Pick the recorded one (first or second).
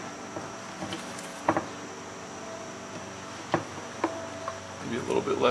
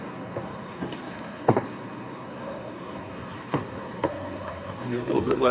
first